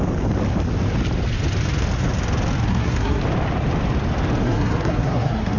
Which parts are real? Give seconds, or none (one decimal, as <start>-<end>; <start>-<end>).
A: 0.0-2.7; 3.2-4.4